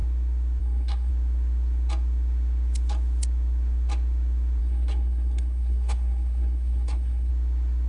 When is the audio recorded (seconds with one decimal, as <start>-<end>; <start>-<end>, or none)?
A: 0.0-0.6; 1.1-4.6; 7.3-7.9